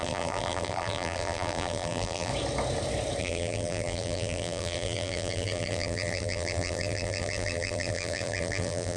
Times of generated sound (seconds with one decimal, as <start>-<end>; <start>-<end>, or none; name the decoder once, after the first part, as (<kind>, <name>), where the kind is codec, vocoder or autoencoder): 0.0-2.3 (vocoder, BigVGAN v2); 3.2-9.0